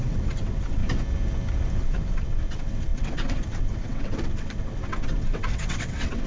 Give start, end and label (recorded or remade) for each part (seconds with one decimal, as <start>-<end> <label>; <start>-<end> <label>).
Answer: 0.0-0.8 remade; 0.8-1.8 recorded; 1.8-6.3 remade